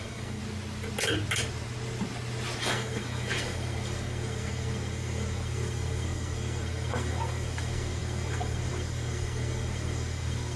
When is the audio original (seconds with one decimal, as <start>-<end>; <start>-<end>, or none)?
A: 0.4-2.6